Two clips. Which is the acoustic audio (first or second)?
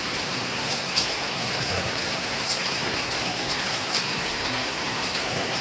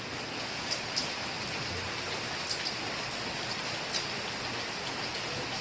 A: second